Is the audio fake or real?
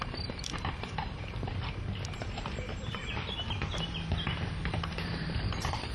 fake